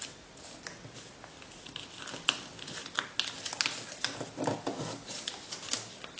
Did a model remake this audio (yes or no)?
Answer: no